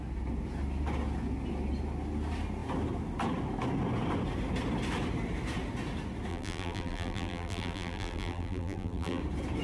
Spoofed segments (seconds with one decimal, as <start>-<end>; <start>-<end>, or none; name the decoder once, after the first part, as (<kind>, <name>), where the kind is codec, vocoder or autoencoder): 6.3-9.2 (vocoder, BigVGAN v2)